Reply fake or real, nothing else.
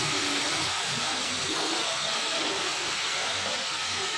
fake